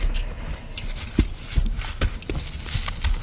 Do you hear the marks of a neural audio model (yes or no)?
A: no